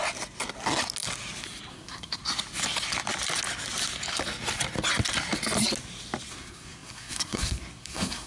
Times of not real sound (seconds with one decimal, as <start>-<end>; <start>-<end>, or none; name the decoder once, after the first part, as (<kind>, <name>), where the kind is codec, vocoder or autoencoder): 1.7-2.2 (codec, SNAC); 6.3-8.3